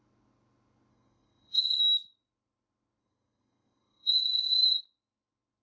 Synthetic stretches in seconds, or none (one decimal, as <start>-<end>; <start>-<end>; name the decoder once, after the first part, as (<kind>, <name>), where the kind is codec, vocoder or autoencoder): 0.9-1.8 (codec, SNAC); 3.0-4.8